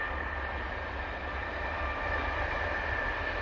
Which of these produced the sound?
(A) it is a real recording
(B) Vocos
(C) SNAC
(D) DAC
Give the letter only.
A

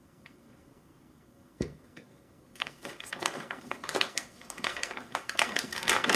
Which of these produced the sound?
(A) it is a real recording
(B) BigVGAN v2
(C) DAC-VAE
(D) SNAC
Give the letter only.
D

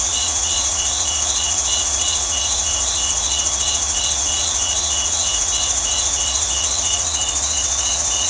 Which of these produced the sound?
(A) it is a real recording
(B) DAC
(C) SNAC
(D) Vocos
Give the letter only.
D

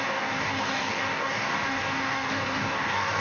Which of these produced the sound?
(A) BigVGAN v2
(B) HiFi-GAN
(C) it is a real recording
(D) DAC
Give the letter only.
D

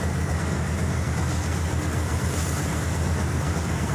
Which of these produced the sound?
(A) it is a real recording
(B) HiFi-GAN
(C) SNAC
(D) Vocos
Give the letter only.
C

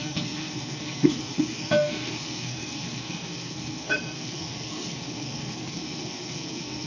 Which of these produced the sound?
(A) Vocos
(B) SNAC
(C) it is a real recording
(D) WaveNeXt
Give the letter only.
B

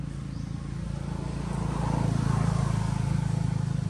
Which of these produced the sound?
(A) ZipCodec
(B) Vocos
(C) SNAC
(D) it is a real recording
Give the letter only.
D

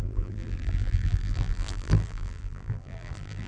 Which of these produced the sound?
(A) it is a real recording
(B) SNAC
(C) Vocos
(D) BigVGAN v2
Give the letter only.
D